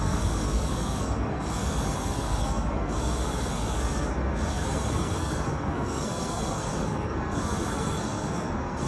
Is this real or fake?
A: fake